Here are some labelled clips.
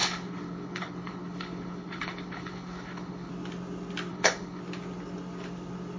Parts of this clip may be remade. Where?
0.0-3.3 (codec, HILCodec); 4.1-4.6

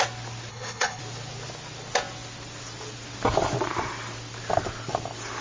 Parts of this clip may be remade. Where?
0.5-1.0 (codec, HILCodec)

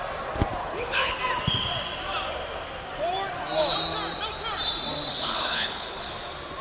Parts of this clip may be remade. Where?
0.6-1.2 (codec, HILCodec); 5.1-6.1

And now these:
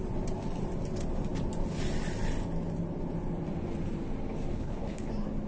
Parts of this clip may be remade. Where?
4.5-5.1 (codec, HILCodec)